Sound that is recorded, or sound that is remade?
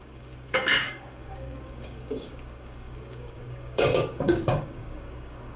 remade